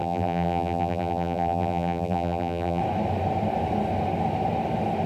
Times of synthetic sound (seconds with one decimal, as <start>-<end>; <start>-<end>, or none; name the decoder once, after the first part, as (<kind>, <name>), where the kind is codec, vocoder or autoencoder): 0.0-2.8 (vocoder, BigVGAN v2)